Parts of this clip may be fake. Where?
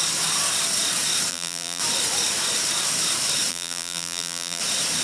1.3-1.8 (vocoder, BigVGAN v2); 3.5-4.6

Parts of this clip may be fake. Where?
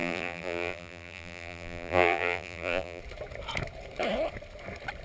0.0-3.0 (vocoder, BigVGAN v2)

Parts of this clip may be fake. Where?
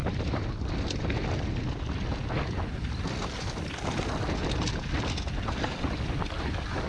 4.4-6.2 (vocoder, BigVGAN v2)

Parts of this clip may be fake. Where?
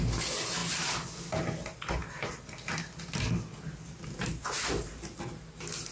none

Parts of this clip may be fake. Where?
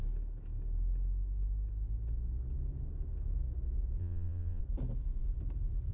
4.0-4.6 (vocoder, BigVGAN v2)